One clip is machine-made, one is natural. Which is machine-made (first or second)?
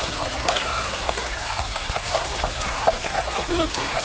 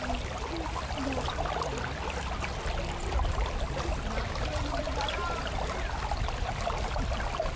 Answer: first